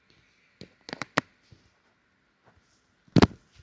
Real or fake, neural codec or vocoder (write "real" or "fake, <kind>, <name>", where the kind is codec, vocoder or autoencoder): real